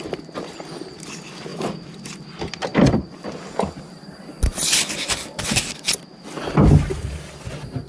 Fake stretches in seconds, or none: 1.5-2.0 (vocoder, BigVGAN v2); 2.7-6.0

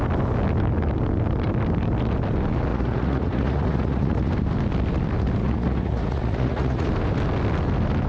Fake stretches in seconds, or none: 2.7-4.3 (vocoder, Vocos); 5.4-6.9

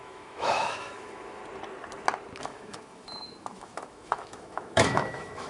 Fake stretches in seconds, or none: 0.0-1.4 (autoencoder, DAC-VAE); 2.4-5.5

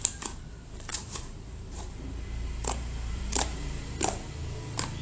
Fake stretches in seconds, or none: 0.9-3.9 (vocoder, BigVGAN v2)